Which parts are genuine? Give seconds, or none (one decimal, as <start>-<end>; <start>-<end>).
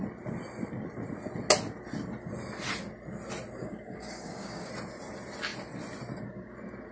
0.0-3.6; 4.7-6.9